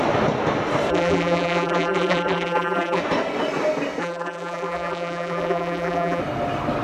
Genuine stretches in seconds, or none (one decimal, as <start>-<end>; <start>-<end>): 0.0-0.9; 3.0-4.0; 6.2-6.8